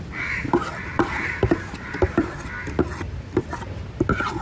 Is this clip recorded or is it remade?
recorded